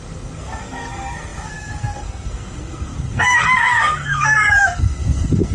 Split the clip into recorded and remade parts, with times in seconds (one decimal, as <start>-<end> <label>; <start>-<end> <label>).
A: 0.0-5.5 remade